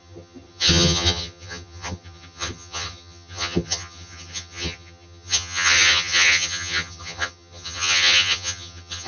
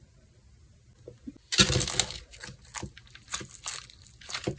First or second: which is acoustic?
second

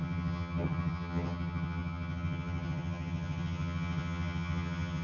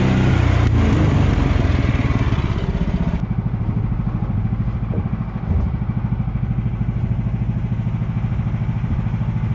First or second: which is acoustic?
second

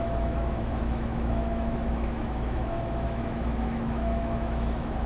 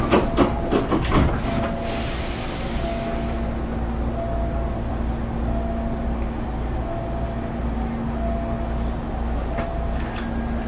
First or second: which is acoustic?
second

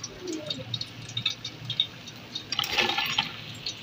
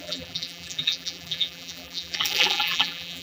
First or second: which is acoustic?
first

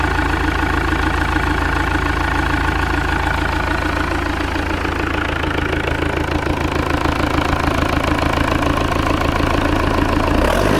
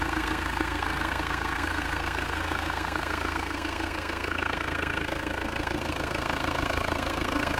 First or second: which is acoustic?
first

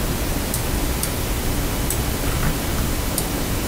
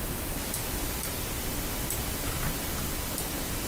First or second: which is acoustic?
first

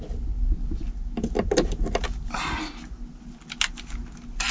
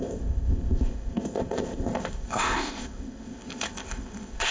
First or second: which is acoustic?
first